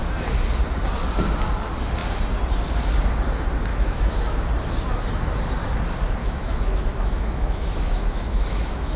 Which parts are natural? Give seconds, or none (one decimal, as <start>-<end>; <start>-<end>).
0.0-3.7; 4.5-6.2